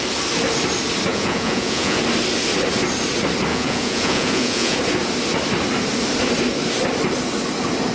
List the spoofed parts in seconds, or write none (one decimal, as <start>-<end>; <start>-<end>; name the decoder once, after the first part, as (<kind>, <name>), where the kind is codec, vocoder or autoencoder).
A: 1.1-2.0 (vocoder, Vocos); 3.5-4.8